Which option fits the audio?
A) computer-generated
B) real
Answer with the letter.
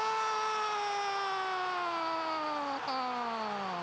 B